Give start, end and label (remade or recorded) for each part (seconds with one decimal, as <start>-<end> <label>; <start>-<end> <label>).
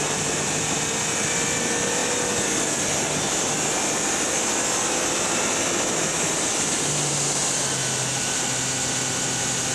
0.0-9.7 recorded